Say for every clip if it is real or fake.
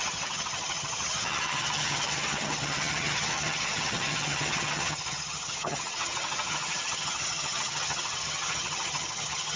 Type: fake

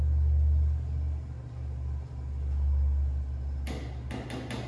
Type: real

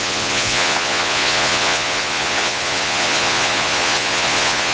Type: fake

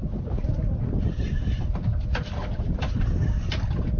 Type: real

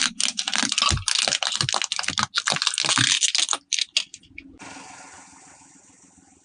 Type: real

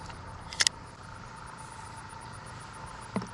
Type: real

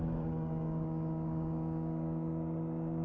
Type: fake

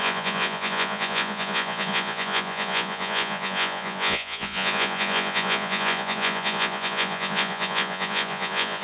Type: fake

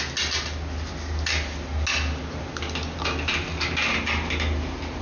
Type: real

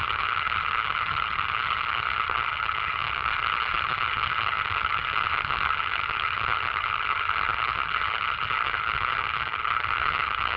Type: fake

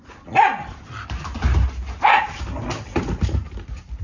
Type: real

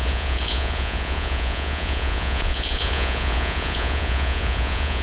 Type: fake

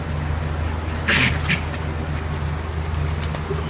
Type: real